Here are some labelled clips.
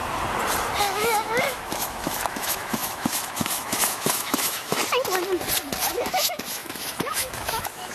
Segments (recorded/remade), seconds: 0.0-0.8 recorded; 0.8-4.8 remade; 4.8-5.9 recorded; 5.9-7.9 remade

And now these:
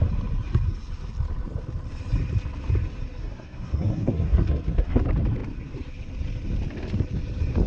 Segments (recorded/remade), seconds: 0.0-3.2 recorded; 3.2-5.0 remade; 5.0-7.7 recorded

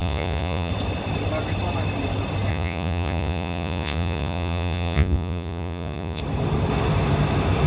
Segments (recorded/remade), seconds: 0.0-0.7 remade; 0.7-2.5 recorded; 2.5-6.2 remade; 6.2-7.7 recorded

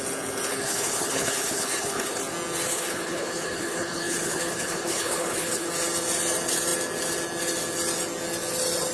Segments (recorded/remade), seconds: 0.0-0.5 recorded; 0.5-2.2 remade; 2.2-2.7 recorded; 2.7-5.7 remade; 5.7-8.9 recorded

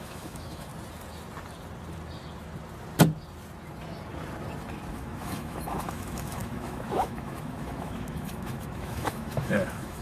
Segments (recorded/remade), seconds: 0.0-0.7 remade; 0.7-4.9 recorded; 4.9-10.0 remade

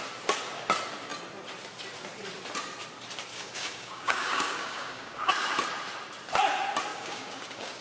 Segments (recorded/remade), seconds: 0.0-3.3 recorded; 3.3-5.3 remade; 5.3-6.9 recorded; 6.9-7.8 remade